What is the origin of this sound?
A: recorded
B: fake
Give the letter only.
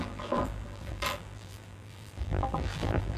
B